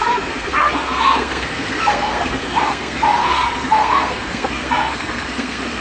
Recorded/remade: remade